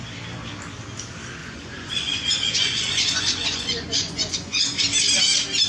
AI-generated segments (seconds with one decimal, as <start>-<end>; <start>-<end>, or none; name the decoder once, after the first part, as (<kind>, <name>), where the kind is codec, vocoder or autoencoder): 1.4-4.8 (vocoder, Vocos)